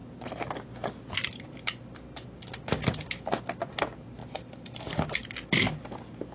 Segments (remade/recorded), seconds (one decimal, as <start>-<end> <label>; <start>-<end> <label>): 0.0-4.2 recorded; 4.2-4.9 remade; 4.9-6.3 recorded